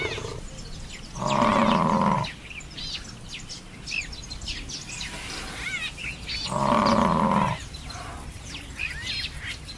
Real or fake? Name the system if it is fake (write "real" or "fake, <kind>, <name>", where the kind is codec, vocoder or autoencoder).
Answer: real